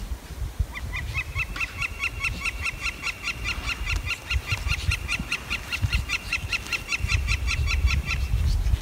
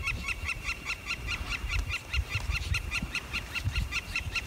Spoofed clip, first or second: second